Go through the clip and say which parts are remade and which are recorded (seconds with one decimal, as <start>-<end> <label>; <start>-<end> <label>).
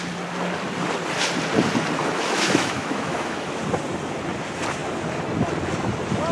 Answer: 0.0-2.0 recorded; 2.0-3.6 remade; 3.6-6.3 recorded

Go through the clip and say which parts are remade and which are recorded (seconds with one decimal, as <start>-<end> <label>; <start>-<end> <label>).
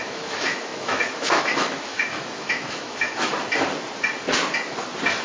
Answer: 0.0-3.3 remade; 3.3-5.2 recorded